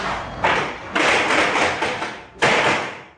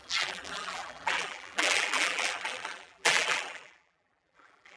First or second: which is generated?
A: second